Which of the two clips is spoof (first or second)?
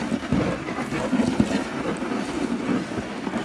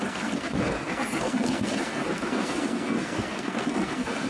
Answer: second